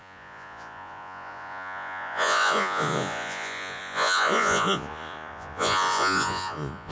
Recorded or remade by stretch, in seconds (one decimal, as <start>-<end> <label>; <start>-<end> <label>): 0.0-6.9 remade